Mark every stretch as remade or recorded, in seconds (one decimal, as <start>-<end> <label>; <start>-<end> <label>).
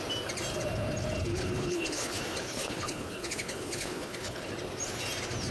0.0-1.3 recorded; 1.3-4.5 remade; 4.5-5.5 recorded